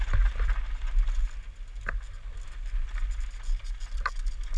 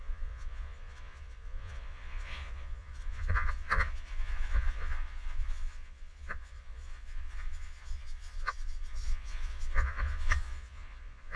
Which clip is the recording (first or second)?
first